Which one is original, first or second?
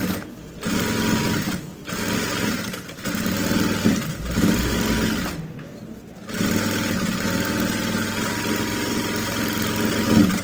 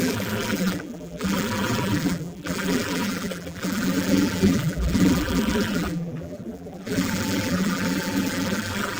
first